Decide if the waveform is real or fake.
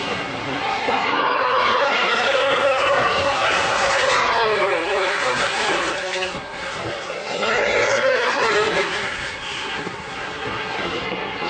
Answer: fake